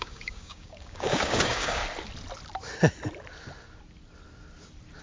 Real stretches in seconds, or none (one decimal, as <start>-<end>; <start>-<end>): 1.8-5.0